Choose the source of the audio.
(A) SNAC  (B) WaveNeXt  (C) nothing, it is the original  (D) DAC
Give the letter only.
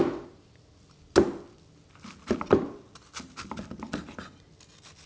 C